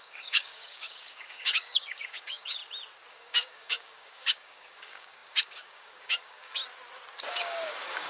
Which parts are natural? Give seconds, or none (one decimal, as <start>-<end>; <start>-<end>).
2.6-3.1; 6.6-7.4